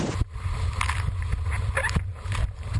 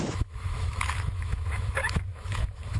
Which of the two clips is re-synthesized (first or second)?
second